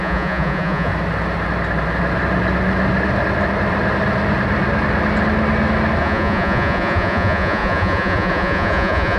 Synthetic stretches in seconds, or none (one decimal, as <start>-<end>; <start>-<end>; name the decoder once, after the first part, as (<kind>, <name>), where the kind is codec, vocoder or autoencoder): 0.0-0.9 (vocoder, Vocos); 6.0-9.2